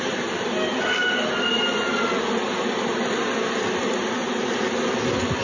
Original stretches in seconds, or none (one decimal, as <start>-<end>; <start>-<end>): 0.0-5.4